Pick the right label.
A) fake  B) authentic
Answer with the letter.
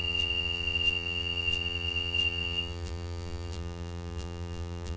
A